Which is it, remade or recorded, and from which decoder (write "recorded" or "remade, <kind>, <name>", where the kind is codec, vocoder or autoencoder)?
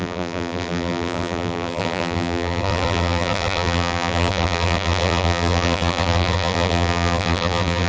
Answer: remade, vocoder, BigVGAN v2